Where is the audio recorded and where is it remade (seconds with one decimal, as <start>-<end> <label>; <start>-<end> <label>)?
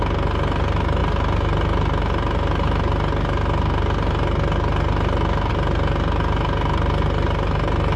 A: 0.0-8.0 recorded